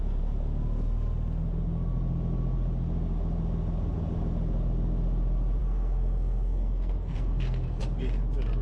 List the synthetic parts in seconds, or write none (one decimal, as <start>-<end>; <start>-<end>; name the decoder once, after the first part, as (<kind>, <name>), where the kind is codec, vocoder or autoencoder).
5.6-7.8 (codec, SNAC)